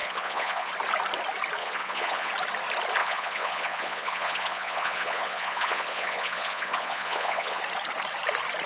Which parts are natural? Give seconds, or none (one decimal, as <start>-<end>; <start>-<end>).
0.7-1.6; 2.3-3.0; 7.6-8.7

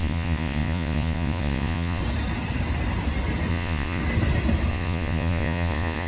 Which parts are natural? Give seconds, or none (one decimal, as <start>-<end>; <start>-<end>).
2.0-3.5; 4.0-4.7

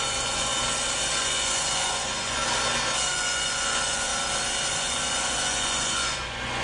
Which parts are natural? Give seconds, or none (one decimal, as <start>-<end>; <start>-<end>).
0.5-1.2; 2.4-3.1; 4.1-4.7

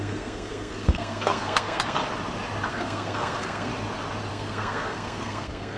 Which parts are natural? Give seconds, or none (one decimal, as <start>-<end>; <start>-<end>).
2.0-2.7; 3.7-4.3

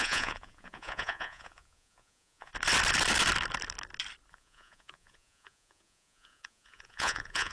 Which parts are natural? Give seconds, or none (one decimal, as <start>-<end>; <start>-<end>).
2.5-4.3